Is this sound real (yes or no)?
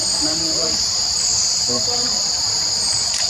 no